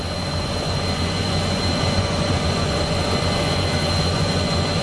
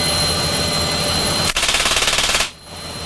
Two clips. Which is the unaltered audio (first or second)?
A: second